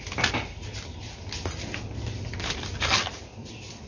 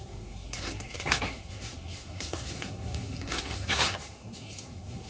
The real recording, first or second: first